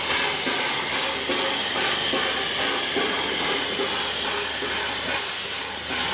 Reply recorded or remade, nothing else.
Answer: recorded